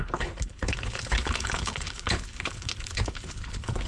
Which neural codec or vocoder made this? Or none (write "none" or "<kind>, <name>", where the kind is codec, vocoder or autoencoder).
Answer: codec, HILCodec